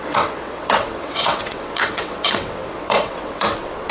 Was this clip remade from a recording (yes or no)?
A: yes